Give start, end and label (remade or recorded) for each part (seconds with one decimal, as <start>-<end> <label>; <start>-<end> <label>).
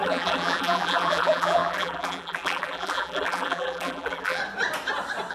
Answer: 0.0-4.4 remade; 4.4-5.3 recorded